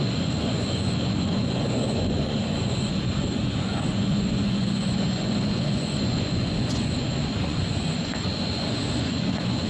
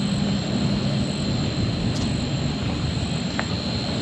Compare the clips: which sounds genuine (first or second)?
second